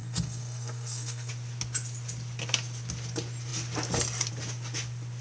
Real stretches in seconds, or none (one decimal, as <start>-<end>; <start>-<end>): 1.3-5.2